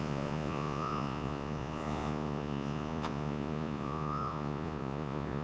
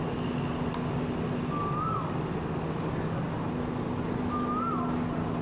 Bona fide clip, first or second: second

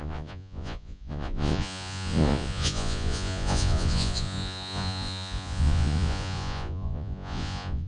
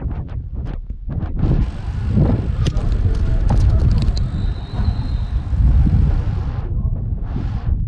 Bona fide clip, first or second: second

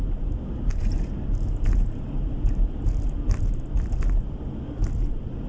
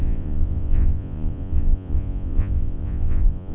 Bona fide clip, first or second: first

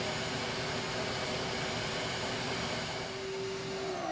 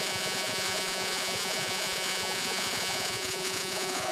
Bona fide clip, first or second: first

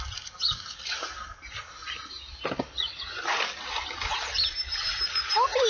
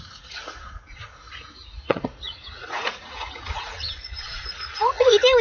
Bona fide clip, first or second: first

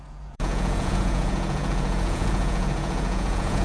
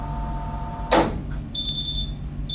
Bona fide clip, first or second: second